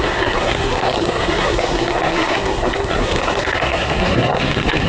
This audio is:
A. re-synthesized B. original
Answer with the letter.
A